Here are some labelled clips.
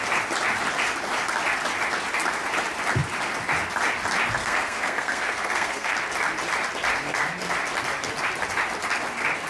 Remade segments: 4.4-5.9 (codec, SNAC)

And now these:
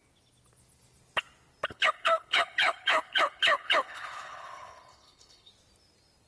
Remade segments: 1.7-5.5 (codec, HILCodec)

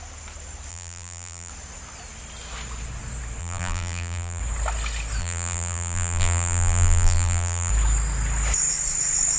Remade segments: 0.7-1.5 (vocoder, BigVGAN v2); 3.4-4.4; 5.2-7.7

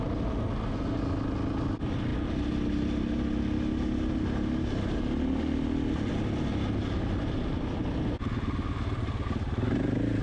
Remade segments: none